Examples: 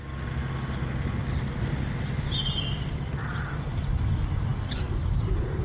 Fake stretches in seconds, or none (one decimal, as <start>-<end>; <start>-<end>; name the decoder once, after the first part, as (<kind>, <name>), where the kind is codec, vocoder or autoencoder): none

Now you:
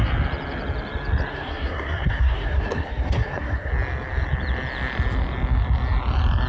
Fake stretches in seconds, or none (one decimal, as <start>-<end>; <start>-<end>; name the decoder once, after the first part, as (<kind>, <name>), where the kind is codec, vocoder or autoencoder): 1.3-3.7 (codec, SNAC)

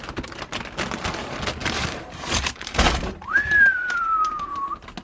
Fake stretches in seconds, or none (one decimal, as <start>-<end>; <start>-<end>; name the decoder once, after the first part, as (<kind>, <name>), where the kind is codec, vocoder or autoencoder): 1.6-4.6 (vocoder, BigVGAN v2)

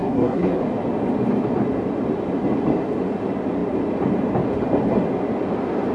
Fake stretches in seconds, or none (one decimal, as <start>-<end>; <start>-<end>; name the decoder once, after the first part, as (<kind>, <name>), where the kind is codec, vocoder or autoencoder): 0.0-0.6 (codec, SNAC)

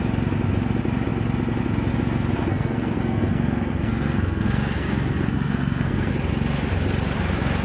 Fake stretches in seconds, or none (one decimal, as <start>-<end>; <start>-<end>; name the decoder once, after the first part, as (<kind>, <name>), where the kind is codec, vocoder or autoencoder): 2.5-6.1 (codec, SNAC)

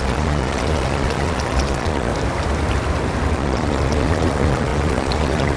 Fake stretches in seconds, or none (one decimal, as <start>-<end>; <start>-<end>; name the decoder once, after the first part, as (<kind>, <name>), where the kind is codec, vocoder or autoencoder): 0.0-2.1 (vocoder, Vocos); 3.3-5.6

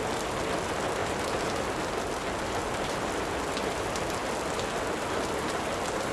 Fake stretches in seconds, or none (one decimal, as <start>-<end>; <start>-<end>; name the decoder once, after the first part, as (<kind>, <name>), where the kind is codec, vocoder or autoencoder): none

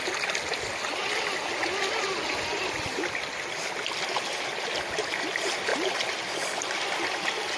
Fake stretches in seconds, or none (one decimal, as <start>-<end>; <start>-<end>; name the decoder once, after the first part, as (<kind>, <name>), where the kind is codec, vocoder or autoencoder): none